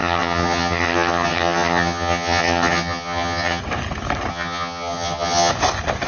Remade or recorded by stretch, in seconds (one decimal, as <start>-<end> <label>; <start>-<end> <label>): 0.0-3.6 remade; 3.6-4.3 recorded; 4.3-5.5 remade; 5.5-6.1 recorded